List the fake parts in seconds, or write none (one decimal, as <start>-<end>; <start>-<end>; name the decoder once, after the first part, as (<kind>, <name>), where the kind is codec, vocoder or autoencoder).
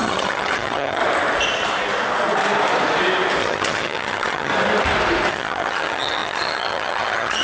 0.0-1.0 (vocoder, HiFi-GAN); 3.4-4.5; 5.3-7.4